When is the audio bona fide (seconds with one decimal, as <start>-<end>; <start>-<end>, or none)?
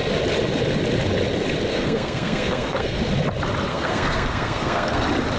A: 0.0-1.7; 3.0-3.7; 5.0-5.4